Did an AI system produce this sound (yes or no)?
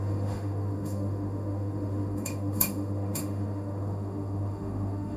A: yes